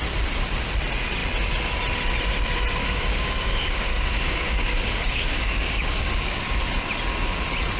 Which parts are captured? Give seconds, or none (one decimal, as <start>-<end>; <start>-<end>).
0.0-2.8; 6.4-7.8